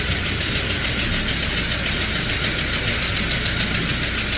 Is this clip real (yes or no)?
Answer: yes